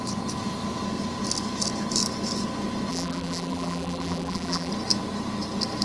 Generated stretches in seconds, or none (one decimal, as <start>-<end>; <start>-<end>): 2.9-4.7